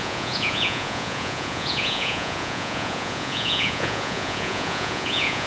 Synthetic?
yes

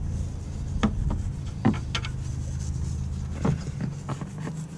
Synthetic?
no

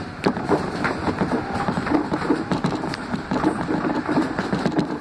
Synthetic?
yes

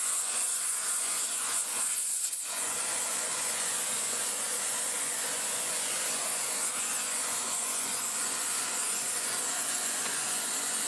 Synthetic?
yes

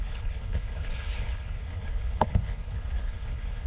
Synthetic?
yes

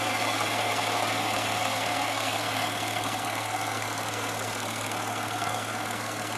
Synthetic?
yes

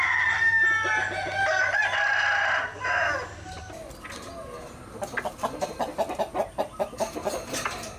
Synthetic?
no